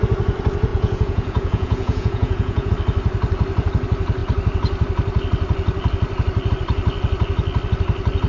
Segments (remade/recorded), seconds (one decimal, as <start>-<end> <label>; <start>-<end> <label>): 0.0-0.7 recorded; 0.7-2.7 remade; 2.7-8.3 recorded

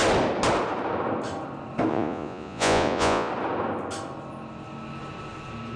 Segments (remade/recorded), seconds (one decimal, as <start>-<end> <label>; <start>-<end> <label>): 0.0-1.9 recorded; 1.9-3.3 remade; 3.3-5.8 recorded

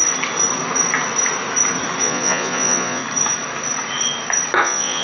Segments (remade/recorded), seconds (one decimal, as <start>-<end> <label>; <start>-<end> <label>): 0.0-2.0 recorded; 2.0-3.0 remade; 3.0-4.6 recorded; 4.6-5.0 remade

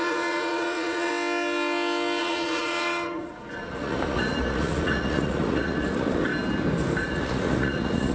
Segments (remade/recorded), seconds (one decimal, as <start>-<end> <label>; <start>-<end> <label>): 0.0-1.1 remade; 1.1-2.2 recorded; 2.2-6.3 remade; 6.3-7.0 recorded; 7.0-8.1 remade